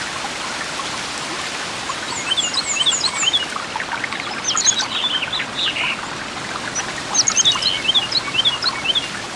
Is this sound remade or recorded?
recorded